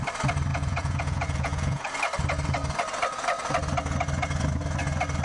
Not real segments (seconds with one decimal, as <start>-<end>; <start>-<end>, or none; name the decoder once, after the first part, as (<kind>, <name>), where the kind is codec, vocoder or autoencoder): 0.5-1.9 (vocoder, Vocos)